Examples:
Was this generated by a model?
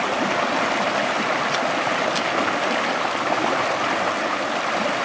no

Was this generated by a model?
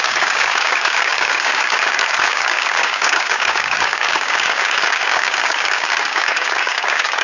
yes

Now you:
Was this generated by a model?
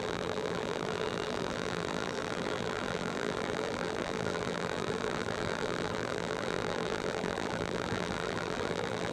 yes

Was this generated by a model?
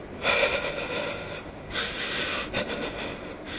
no